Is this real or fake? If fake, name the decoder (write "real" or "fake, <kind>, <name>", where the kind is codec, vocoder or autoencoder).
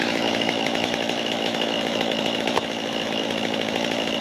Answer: fake, autoencoder, DAC-VAE